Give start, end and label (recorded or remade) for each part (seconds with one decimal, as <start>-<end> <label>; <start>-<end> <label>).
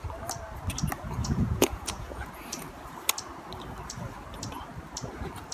0.0-1.2 recorded; 1.2-2.3 remade; 2.3-5.5 recorded